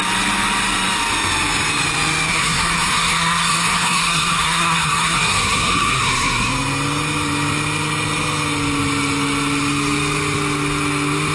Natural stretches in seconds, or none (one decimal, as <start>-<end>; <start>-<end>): 0.0-2.3; 6.5-11.3